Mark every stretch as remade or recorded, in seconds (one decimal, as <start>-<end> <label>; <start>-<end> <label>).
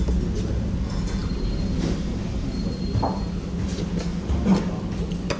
0.0-1.2 recorded; 1.2-3.3 remade; 3.3-4.1 recorded; 4.1-4.6 remade; 4.6-5.4 recorded